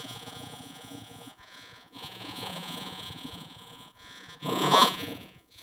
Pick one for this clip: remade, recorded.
remade